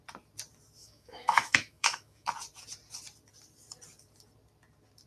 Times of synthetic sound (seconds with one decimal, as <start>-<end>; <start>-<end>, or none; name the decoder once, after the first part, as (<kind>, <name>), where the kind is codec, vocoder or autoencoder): 0.8-2.3 (autoencoder, DAC-VAE)

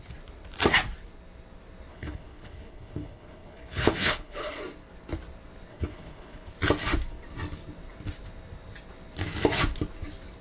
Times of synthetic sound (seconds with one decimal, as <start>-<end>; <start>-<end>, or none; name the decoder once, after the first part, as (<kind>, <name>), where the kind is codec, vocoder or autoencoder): 1.9-4.6 (codec, HILCodec); 5.7-6.5

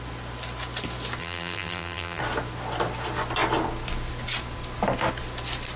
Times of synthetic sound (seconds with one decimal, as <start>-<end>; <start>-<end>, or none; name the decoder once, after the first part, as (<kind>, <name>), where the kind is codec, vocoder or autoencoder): 1.2-2.2 (vocoder, BigVGAN v2)

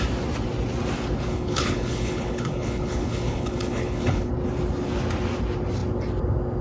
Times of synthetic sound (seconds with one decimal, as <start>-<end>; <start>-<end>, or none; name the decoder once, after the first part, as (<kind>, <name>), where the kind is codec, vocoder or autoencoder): 1.3-4.3 (codec, HILCodec)

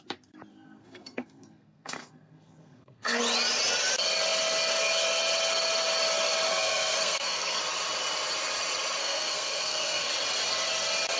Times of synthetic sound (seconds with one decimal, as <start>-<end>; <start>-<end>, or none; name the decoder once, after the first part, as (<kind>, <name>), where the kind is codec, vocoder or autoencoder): 0.5-3.2 (codec, SNAC); 6.5-7.6; 9.0-10.1